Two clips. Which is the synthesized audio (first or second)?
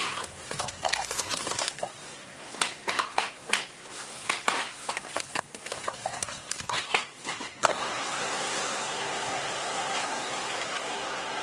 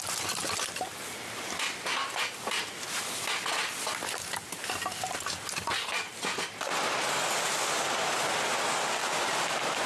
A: first